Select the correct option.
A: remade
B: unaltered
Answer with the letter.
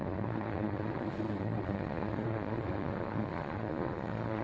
A